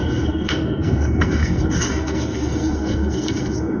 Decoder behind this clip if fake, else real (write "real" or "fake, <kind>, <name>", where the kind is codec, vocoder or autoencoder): fake, codec, SNAC